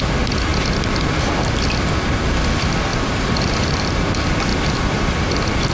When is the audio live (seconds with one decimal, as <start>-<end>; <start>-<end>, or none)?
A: 0.0-2.9; 4.0-5.7